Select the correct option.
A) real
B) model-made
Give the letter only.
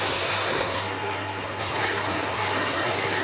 B